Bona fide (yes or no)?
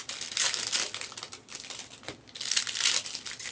yes